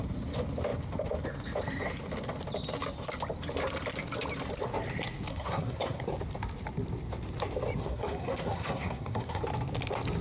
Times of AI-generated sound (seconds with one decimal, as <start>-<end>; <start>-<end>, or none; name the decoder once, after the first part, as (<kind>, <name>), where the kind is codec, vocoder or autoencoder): 5.3-6.0 (codec, SNAC); 7.8-9.4